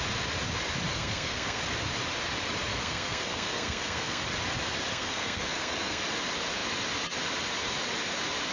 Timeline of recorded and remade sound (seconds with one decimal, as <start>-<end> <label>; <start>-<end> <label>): 0.0-0.9 recorded; 0.9-1.6 remade; 1.6-2.7 recorded; 2.7-4.2 remade; 4.2-4.9 recorded; 4.9-6.0 remade; 6.0-8.5 recorded